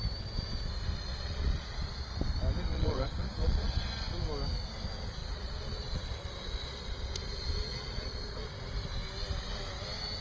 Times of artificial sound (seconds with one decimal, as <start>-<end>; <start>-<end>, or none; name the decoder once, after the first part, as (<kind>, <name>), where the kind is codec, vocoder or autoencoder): 1.1-2.2 (vocoder, Vocos); 2.7-3.9; 5.2-8.5